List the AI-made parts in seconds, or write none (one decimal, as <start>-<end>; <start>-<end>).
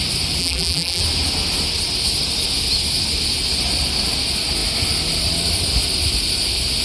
0.4-1.0